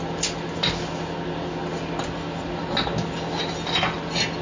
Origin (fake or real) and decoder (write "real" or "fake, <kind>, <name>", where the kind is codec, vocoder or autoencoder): real